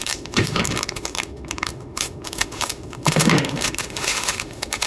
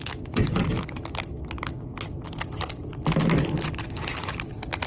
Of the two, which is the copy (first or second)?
first